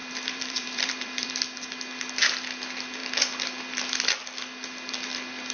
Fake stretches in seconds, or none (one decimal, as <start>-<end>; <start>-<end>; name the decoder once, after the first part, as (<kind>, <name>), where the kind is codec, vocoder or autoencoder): 0.0-1.3 (vocoder, BigVGAN v2)